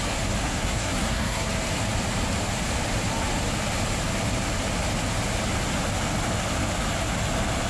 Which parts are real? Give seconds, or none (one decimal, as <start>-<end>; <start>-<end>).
0.0-0.4; 1.5-7.7